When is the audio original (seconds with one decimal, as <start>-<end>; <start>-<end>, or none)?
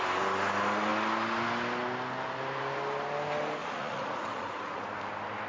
0.0-3.6; 4.8-5.5